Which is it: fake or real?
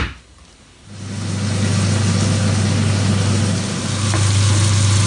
real